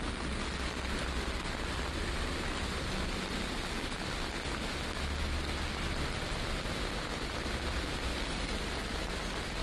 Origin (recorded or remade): recorded